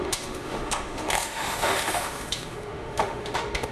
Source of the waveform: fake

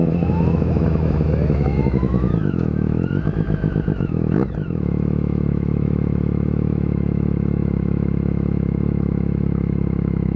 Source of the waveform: fake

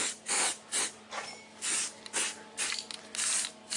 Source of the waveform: real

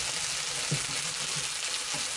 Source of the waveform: real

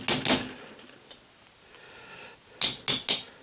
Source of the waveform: real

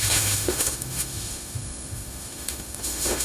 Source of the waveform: fake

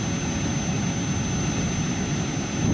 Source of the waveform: real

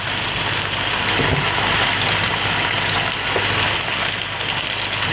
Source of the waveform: real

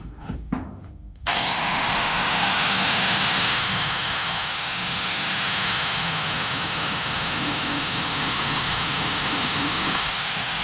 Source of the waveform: fake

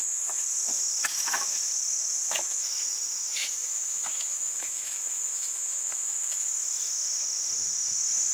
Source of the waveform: fake